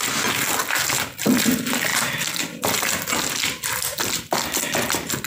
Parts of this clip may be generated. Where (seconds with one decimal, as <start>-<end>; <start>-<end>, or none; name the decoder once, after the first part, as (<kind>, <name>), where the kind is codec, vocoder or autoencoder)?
none